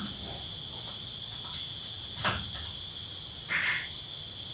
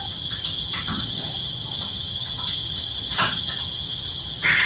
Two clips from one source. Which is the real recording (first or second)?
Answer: first